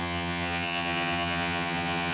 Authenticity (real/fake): fake